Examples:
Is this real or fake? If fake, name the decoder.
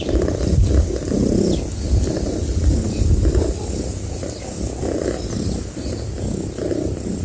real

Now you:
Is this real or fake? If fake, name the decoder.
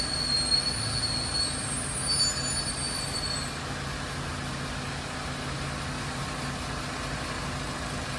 real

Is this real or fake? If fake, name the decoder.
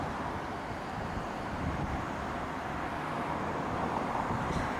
fake, vocoder, BigVGAN v2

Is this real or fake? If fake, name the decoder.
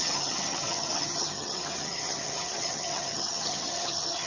fake, vocoder, HiFi-GAN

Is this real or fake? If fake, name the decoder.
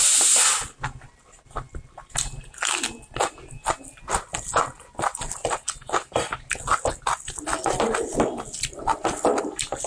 real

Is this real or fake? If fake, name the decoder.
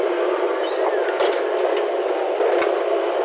real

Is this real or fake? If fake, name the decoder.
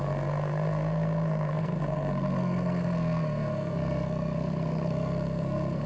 fake, codec, SNAC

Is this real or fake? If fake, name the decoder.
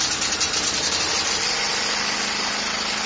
real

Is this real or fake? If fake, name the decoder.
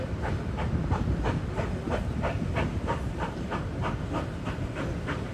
real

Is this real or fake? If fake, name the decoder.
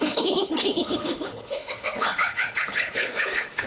fake, codec, HILCodec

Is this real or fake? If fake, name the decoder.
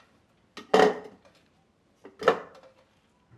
real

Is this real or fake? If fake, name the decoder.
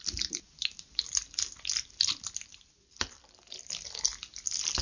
real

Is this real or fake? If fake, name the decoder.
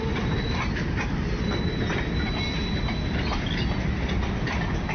real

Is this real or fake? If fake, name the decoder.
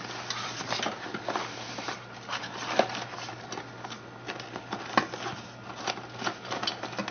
real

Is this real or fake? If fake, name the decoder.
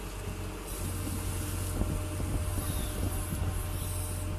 real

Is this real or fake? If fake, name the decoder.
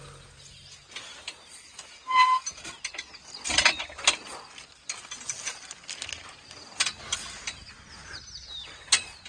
real